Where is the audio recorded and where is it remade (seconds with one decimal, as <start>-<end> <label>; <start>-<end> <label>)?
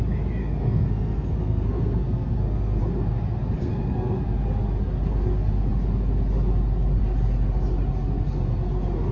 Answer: 0.0-0.4 recorded; 0.4-2.8 remade; 2.8-3.6 recorded; 3.6-4.2 remade; 4.2-9.1 recorded